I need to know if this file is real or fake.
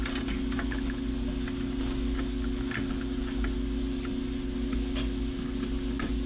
real